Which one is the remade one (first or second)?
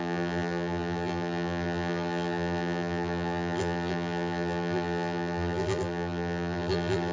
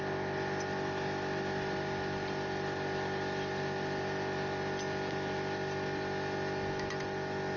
first